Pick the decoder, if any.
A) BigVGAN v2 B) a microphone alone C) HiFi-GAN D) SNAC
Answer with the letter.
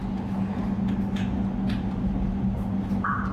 B